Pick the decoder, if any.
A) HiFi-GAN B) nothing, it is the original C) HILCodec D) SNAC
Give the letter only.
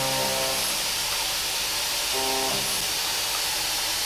B